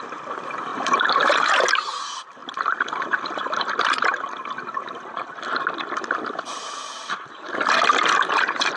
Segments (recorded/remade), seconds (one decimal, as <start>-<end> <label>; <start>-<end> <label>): 0.0-2.4 remade; 2.4-6.3 recorded; 6.3-7.0 remade; 7.0-8.3 recorded; 8.3-8.8 remade